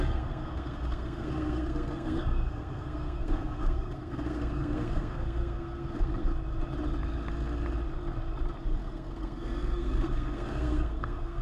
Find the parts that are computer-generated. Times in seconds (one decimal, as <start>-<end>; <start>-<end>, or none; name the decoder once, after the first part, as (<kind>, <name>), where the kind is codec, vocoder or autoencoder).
0.0-6.3 (codec, SNAC); 8.6-11.4